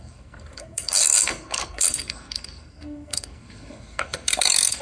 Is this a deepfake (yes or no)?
yes